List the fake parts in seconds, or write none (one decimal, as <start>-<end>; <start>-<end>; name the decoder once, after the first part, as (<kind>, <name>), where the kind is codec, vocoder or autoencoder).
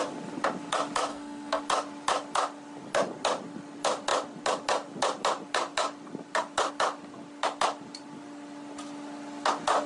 1.1-1.6 (codec, SNAC)